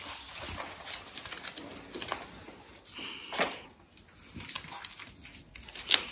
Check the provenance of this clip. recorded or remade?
recorded